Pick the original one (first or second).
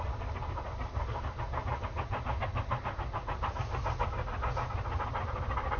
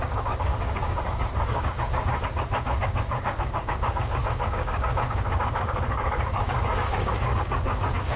first